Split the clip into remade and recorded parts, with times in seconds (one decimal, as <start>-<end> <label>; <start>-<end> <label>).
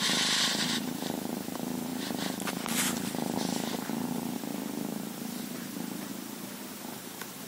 0.0-1.9 remade; 1.9-2.5 recorded; 2.5-4.5 remade; 4.5-5.4 recorded; 5.4-6.1 remade; 6.1-6.8 recorded; 6.8-7.5 remade